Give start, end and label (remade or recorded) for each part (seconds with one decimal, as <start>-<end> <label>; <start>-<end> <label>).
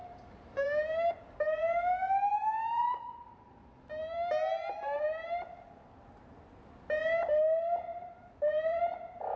0.0-1.2 remade; 1.2-2.0 recorded; 2.0-3.5 remade; 3.5-4.0 recorded; 4.0-5.4 remade; 5.4-7.9 recorded; 7.9-8.8 remade; 8.8-9.4 recorded